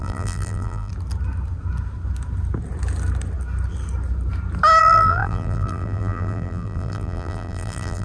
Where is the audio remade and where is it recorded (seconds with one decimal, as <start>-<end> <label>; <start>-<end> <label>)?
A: 0.0-0.9 remade; 0.9-4.8 recorded; 4.8-8.0 remade